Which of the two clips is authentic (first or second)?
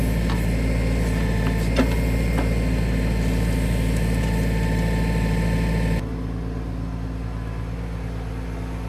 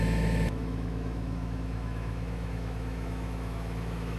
first